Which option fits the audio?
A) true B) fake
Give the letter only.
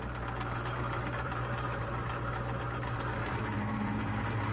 B